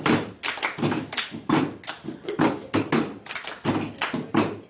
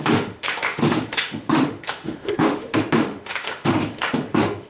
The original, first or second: first